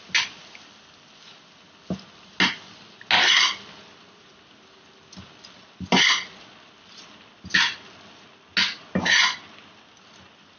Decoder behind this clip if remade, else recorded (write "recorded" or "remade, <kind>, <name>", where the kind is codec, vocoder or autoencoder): recorded